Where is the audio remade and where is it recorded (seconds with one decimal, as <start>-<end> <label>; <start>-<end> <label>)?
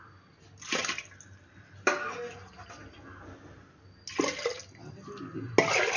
0.0-6.0 recorded